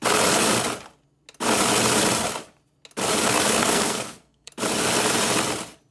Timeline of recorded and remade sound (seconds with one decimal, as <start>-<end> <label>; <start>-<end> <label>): 0.0-3.6 recorded; 3.6-4.5 remade; 4.5-5.9 recorded